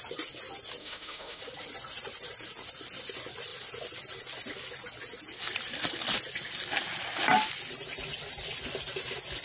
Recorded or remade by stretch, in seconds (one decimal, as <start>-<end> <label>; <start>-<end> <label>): 0.0-0.8 recorded; 0.8-1.4 remade; 1.4-9.4 recorded